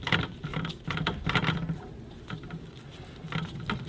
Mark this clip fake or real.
real